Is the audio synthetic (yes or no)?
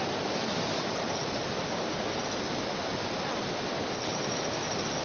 no